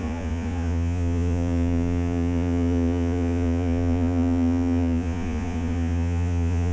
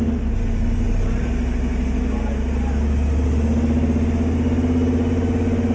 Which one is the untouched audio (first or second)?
second